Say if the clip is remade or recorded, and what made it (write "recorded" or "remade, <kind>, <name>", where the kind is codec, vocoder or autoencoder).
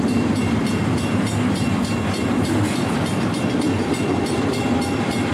remade, vocoder, BigVGAN v2